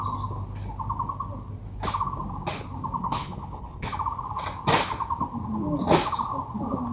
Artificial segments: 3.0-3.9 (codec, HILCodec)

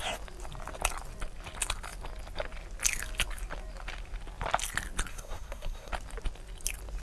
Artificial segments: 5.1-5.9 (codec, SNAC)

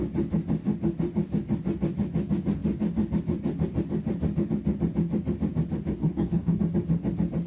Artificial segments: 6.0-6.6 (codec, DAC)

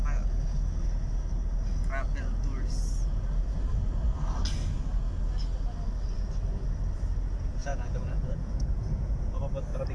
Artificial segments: 7.6-9.4 (vocoder, Vocos)